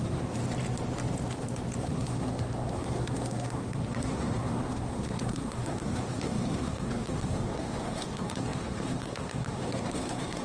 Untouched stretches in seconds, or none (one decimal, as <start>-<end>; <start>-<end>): 0.4-1.8